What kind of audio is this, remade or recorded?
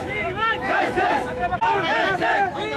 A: remade